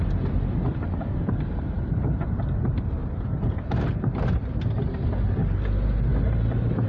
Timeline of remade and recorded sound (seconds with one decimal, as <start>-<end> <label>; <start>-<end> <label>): 0.0-1.2 recorded; 1.2-2.4 remade; 2.4-6.1 recorded; 6.1-6.9 remade